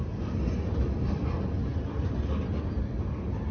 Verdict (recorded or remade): recorded